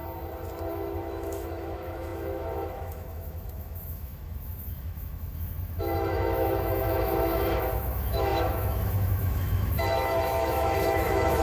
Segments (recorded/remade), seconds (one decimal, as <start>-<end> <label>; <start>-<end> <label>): 0.0-0.7 recorded; 0.7-11.4 remade